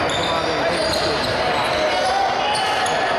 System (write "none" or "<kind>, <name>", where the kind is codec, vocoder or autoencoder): none